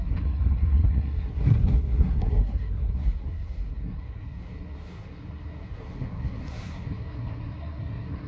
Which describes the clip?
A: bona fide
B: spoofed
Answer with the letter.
B